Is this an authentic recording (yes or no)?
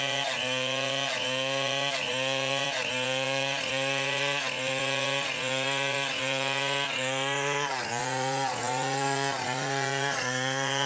no